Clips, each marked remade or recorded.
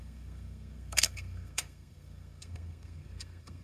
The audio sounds remade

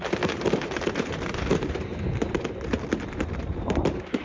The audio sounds remade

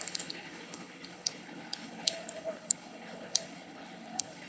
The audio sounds remade